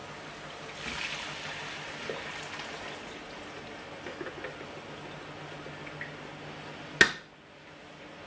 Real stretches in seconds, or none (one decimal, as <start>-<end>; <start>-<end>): 0.0-8.3